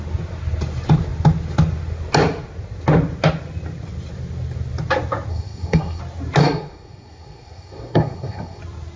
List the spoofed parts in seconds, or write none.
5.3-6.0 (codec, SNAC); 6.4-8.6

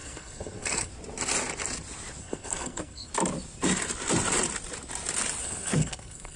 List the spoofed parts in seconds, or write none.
0.0-0.9 (codec, SNAC); 2.2-3.1; 5.4-6.4

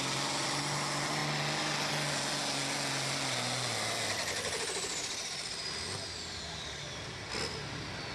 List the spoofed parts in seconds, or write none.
none

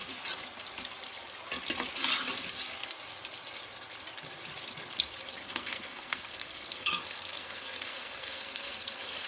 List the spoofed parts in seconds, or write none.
5.3-9.3 (codec, SNAC)

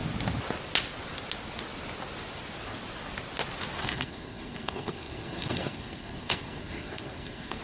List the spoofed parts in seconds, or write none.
3.8-7.6 (codec, SNAC)

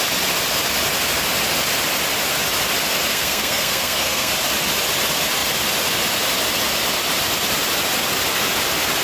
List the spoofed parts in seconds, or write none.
3.1-4.3 (codec, SNAC)

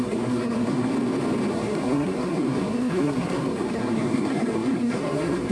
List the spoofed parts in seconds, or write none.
0.0-0.9 (codec, SNAC); 1.5-5.5